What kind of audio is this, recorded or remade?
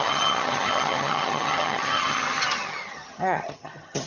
remade